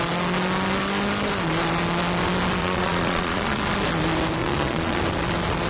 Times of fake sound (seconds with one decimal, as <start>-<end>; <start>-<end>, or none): 2.6-3.6; 4.4-5.0